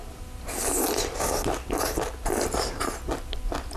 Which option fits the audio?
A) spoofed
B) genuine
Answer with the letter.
B